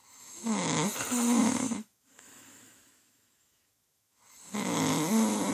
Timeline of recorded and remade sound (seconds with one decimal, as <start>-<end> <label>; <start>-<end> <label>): 0.0-0.9 remade; 0.9-1.4 recorded; 1.4-4.2 remade; 4.2-5.5 recorded